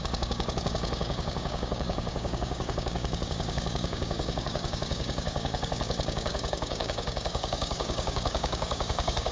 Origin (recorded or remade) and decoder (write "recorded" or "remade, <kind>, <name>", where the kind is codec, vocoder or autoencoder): remade, codec, DAC